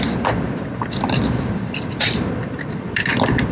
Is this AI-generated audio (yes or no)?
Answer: yes